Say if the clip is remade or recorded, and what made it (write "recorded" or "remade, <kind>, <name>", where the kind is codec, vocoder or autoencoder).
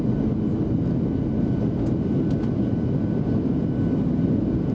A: recorded